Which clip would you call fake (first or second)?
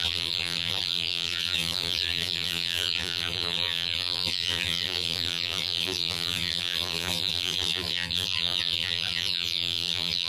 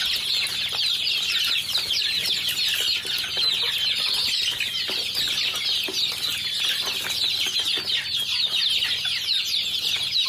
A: first